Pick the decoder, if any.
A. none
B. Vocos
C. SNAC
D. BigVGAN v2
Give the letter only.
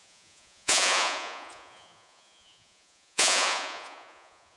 B